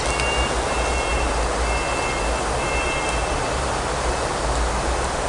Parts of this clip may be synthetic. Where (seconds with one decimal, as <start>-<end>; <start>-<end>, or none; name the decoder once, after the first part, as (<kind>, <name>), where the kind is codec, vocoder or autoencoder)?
none

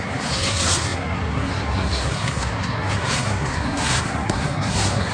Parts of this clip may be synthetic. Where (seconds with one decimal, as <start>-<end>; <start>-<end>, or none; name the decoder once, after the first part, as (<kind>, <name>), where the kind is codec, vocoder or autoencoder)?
0.0-5.1 (codec, SNAC)

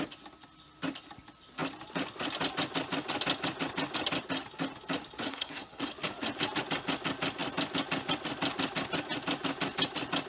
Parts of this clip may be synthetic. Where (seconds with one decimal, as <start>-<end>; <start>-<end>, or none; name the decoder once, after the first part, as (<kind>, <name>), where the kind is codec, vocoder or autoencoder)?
5.3-5.9 (codec, SNAC)

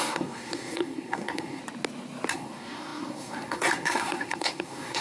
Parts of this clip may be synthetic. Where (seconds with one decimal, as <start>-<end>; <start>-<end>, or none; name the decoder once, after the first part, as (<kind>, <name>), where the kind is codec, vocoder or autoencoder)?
0.0-1.6 (codec, SNAC); 2.3-5.0

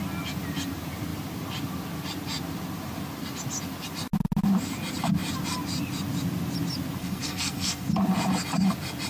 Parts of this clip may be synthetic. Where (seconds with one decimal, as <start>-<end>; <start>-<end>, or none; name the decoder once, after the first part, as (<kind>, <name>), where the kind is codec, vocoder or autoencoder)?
7.0-7.9 (codec, SNAC)

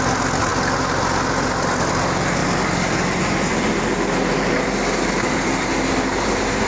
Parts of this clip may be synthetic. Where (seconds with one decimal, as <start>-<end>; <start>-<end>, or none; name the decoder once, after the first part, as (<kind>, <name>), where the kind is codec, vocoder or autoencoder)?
none

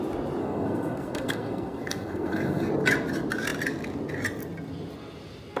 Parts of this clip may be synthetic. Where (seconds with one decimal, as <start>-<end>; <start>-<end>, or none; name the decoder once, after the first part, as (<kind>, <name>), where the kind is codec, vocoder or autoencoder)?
0.4-2.7 (codec, SNAC)